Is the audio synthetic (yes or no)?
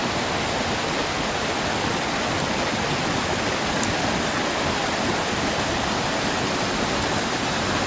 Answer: no